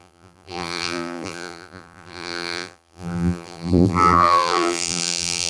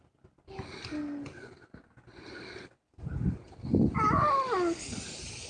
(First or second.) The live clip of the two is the second